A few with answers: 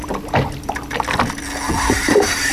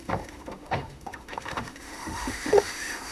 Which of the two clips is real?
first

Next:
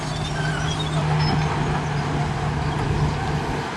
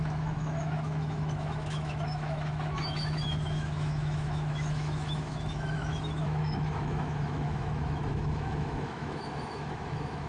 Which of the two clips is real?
first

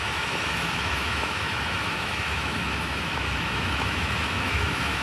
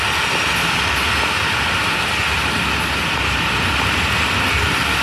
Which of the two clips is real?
second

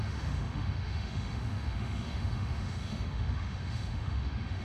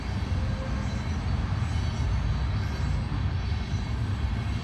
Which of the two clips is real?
second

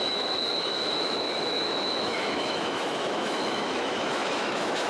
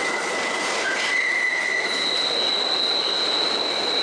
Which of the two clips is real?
second